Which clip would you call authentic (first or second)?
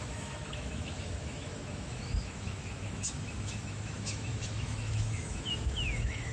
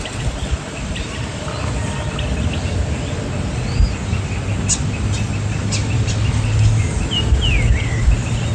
second